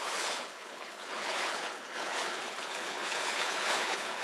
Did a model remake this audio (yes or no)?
yes